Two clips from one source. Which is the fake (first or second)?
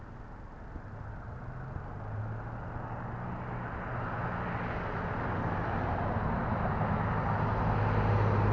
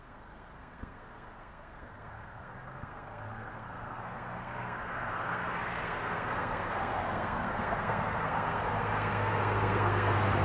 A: second